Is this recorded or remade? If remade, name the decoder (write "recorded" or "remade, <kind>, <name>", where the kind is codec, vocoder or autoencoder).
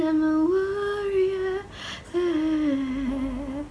recorded